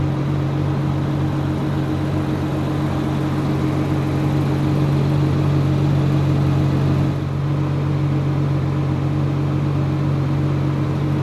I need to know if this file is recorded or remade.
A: recorded